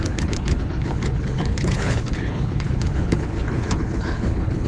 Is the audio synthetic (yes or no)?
yes